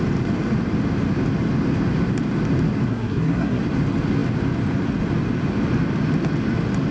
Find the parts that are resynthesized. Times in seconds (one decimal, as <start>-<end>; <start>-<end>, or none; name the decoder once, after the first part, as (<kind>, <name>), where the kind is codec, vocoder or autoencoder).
2.9-3.6 (codec, SNAC)